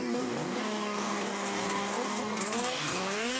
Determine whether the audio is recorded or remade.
remade